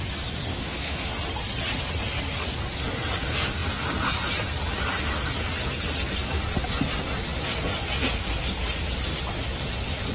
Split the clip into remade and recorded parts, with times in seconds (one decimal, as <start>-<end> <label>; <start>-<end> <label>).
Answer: 0.0-0.5 recorded; 0.5-1.1 remade; 1.1-10.1 recorded